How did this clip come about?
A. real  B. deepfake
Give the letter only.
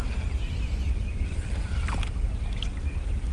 B